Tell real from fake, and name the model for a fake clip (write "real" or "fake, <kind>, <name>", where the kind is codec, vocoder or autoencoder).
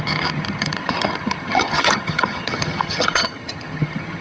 fake, vocoder, HiFi-GAN